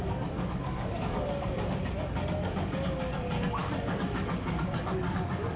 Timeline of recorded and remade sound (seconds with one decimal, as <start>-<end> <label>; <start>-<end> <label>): 0.0-5.6 remade